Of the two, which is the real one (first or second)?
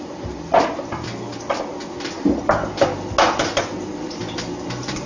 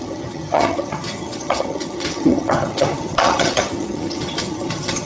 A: first